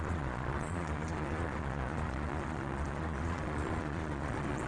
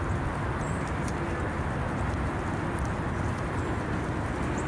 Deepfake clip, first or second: first